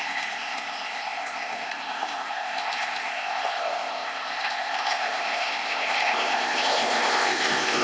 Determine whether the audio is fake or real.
fake